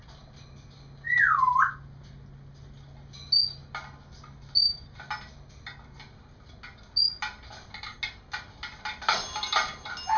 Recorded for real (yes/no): yes